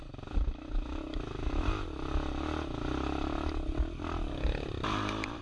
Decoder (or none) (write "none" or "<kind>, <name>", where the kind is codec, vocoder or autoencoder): none